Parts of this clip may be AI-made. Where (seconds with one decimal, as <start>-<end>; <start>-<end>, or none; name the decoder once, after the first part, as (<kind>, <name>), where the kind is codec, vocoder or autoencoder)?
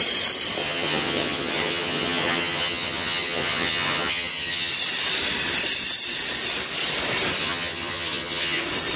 0.6-4.7 (vocoder, HiFi-GAN); 7.4-8.6